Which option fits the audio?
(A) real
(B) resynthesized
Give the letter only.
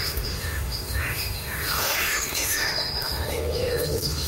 B